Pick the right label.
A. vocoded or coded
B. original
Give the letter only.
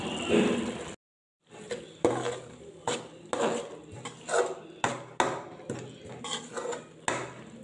B